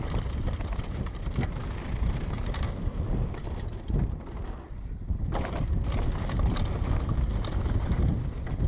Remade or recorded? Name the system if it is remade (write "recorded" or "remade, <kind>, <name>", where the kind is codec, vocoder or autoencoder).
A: recorded